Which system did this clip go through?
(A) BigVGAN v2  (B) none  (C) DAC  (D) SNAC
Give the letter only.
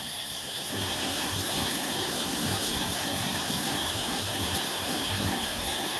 D